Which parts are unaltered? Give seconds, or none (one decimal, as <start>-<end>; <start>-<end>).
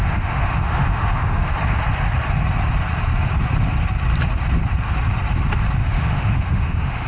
1.5-5.8